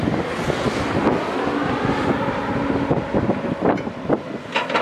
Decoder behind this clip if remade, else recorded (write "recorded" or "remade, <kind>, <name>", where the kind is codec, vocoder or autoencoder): recorded